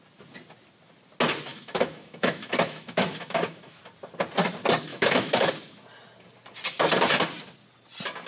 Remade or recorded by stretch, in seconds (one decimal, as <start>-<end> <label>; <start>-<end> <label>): 0.0-1.5 recorded; 1.5-3.8 remade; 3.8-4.9 recorded; 4.9-5.5 remade; 5.5-8.3 recorded